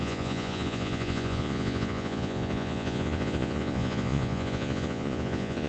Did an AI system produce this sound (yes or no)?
yes